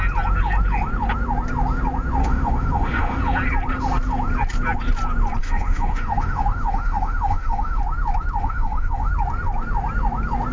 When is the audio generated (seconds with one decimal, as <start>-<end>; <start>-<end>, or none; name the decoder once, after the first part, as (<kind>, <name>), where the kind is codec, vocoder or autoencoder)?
2.2-3.2 (autoencoder, DAC-VAE); 5.4-7.8; 8.4-9.1